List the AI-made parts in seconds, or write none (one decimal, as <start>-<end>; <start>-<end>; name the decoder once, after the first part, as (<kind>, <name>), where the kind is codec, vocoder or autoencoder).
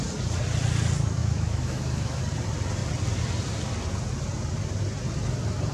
1.2-2.2 (autoencoder, DAC-VAE)